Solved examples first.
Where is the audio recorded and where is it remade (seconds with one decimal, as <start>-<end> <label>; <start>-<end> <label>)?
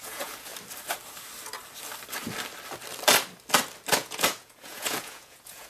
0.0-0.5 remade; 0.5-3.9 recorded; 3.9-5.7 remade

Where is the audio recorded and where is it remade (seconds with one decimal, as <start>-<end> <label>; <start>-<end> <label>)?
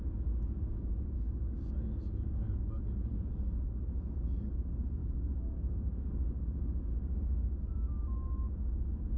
0.0-2.5 remade; 2.5-5.0 recorded; 5.0-7.6 remade; 7.6-9.2 recorded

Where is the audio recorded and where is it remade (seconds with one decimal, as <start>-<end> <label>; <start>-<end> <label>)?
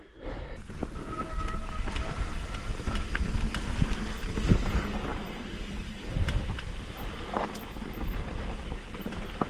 0.0-2.3 recorded; 2.3-2.9 remade; 2.9-5.1 recorded; 5.1-8.3 remade; 8.3-9.5 recorded